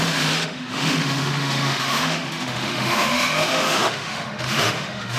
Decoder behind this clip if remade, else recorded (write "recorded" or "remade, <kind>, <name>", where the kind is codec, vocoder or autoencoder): remade, autoencoder, DAC-VAE